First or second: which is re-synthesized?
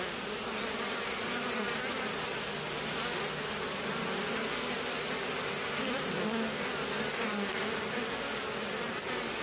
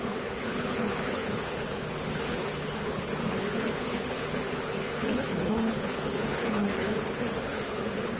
second